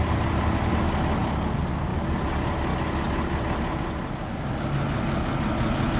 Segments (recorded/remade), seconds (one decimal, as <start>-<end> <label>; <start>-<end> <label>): 0.0-6.0 recorded